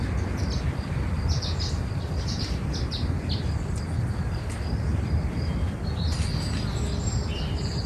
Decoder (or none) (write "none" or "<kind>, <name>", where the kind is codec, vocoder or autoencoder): none